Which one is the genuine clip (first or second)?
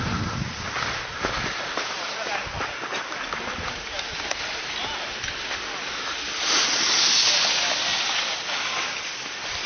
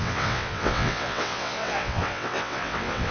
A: first